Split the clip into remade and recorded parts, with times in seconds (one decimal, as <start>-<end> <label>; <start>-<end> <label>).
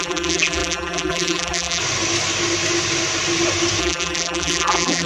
0.0-1.8 remade; 1.8-3.8 recorded; 3.8-5.1 remade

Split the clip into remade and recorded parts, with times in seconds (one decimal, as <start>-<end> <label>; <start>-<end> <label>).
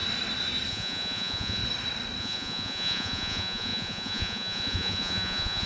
0.0-0.7 recorded; 0.7-1.6 remade; 1.6-2.2 recorded; 2.2-5.7 remade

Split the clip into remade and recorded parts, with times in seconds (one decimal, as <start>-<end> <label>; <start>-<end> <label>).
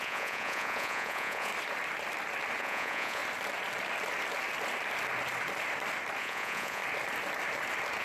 0.0-1.5 remade; 1.5-2.6 recorded; 2.6-3.2 remade; 3.2-6.2 recorded; 6.2-6.8 remade; 6.8-8.0 recorded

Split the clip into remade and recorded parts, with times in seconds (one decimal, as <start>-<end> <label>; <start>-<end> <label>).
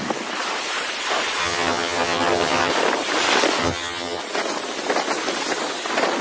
0.0-1.4 recorded; 1.4-2.7 remade; 2.7-3.6 recorded; 3.6-4.2 remade; 4.2-6.2 recorded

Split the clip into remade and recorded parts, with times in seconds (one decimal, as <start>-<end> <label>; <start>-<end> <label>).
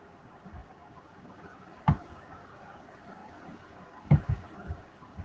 0.0-5.2 remade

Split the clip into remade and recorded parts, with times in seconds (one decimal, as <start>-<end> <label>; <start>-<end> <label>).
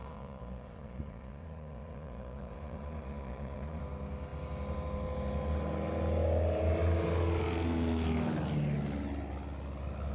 0.0-3.8 remade; 3.8-10.1 recorded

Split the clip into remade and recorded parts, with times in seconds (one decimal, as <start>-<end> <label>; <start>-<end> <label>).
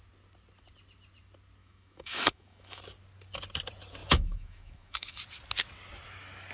0.0-1.6 recorded; 1.6-2.8 remade; 2.8-4.0 recorded; 4.0-5.2 remade; 5.2-6.5 recorded